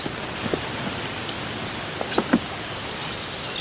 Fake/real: real